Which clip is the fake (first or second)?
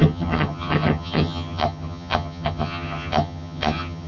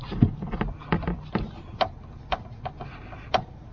first